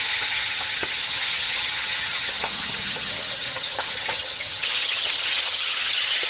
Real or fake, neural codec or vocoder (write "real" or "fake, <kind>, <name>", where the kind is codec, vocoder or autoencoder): fake, vocoder, HiFi-GAN